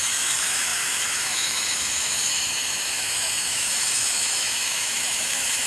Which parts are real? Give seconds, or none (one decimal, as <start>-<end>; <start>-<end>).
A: none